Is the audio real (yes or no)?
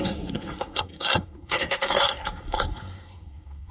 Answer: no